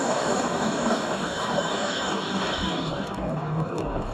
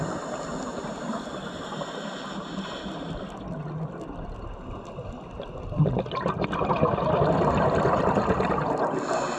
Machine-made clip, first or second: first